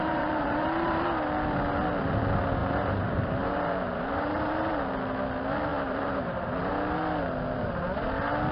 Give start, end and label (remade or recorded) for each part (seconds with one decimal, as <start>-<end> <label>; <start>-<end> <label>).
0.0-1.0 remade; 1.0-2.6 recorded; 2.6-4.7 remade; 4.7-5.7 recorded; 5.7-6.7 remade; 6.7-8.5 recorded

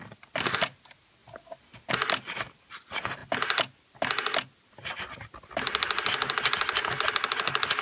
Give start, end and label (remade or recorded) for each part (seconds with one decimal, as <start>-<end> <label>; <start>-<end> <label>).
0.0-7.8 recorded